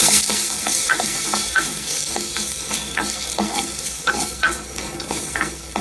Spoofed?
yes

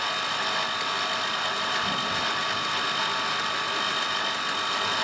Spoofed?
no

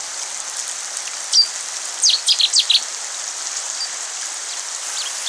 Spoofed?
no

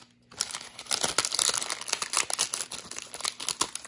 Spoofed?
no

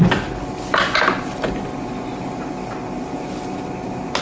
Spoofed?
no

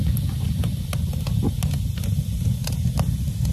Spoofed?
no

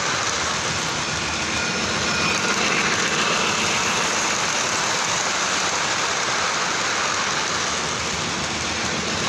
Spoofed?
no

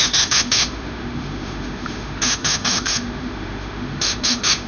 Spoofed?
yes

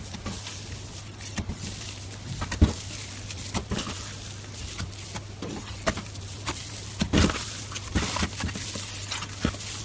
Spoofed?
no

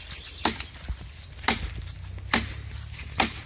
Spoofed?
no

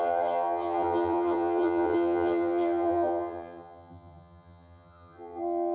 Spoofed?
yes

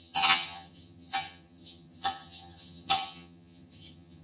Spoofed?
yes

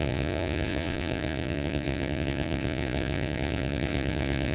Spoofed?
yes